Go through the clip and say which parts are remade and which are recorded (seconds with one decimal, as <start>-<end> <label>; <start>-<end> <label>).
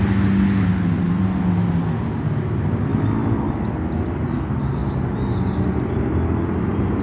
0.0-7.0 recorded